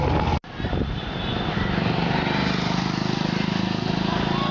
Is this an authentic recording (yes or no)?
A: yes